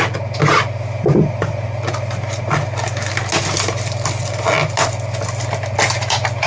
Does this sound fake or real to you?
real